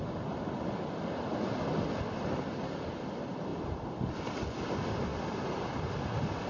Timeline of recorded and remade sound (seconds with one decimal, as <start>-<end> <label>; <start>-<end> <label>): 0.0-3.5 recorded; 3.5-4.1 remade; 4.1-5.1 recorded; 5.1-6.0 remade; 6.0-6.5 recorded